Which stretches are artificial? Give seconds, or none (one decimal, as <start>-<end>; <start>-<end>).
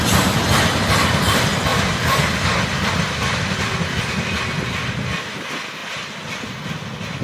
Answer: 1.7-4.0; 5.8-6.7